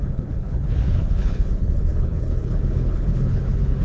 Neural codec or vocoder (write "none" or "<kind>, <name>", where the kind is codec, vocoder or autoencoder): codec, HILCodec